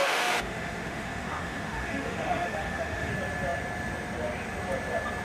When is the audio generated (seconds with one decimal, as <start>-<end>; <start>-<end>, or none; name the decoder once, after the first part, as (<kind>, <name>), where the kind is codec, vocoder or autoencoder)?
0.0-3.1 (autoencoder, DAC-VAE)